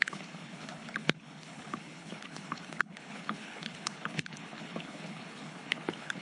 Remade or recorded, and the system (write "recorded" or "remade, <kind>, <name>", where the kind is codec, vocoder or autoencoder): remade, codec, HILCodec